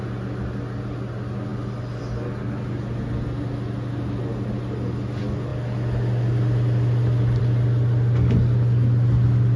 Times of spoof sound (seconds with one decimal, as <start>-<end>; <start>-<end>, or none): none